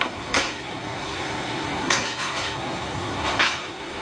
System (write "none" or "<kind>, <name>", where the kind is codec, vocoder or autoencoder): codec, SNAC